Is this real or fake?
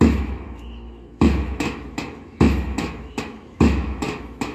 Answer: fake